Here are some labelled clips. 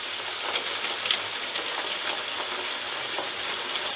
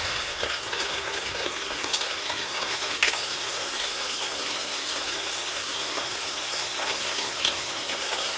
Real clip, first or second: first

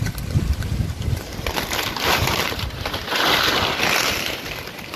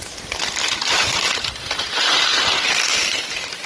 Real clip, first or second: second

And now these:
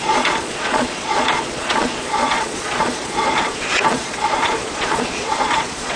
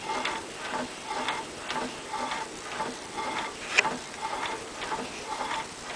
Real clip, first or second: second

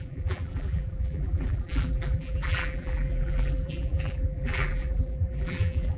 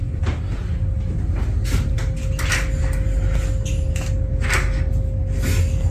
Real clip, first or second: second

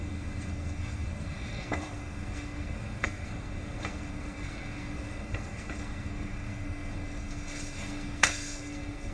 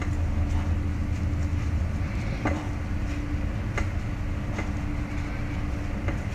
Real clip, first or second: second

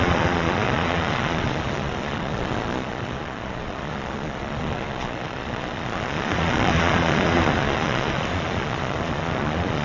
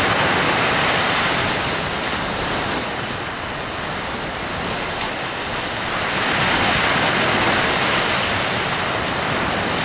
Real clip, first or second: second